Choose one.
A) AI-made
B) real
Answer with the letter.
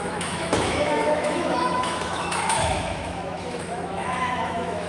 A